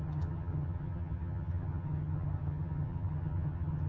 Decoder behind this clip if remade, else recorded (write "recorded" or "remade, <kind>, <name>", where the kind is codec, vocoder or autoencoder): remade, vocoder, HiFi-GAN